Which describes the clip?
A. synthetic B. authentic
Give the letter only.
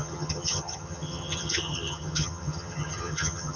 A